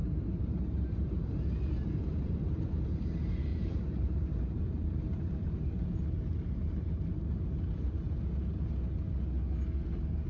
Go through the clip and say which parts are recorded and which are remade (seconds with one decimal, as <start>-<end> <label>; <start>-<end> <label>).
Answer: 0.0-2.3 remade; 2.3-3.5 recorded; 3.5-8.1 remade; 8.1-10.3 recorded

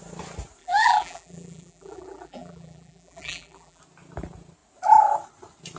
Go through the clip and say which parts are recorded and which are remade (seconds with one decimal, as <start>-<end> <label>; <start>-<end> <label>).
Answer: 0.0-0.6 recorded; 0.6-3.8 remade; 3.8-5.8 recorded

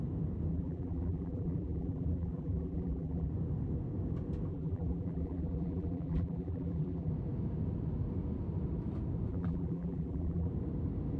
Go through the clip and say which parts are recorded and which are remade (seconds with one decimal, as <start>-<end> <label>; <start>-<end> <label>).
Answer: 0.0-0.5 recorded; 0.5-3.3 remade; 3.3-4.5 recorded; 4.5-7.1 remade; 7.1-9.3 recorded; 9.3-10.5 remade; 10.5-11.2 recorded

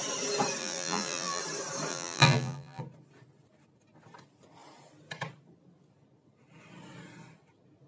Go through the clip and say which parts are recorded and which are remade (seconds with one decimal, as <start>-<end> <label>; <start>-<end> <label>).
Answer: 0.0-0.6 recorded; 0.6-1.4 remade; 1.4-1.9 recorded; 1.9-2.8 remade; 2.8-7.9 recorded